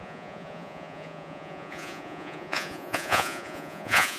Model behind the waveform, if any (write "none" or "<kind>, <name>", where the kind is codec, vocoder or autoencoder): vocoder, Vocos